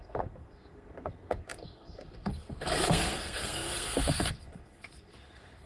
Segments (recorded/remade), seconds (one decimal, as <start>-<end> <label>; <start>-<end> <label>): 0.0-5.7 remade